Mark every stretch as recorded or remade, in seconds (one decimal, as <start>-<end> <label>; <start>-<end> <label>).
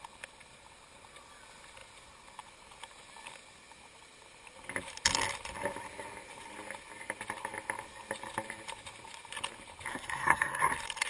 0.0-9.9 recorded; 9.9-10.6 remade; 10.6-11.1 recorded